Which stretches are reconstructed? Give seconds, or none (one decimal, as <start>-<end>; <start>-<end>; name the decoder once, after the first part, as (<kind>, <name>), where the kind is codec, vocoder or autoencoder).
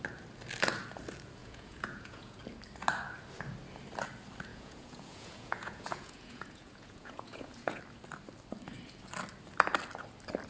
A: 1.4-2.4 (vocoder, Vocos); 4.5-7.8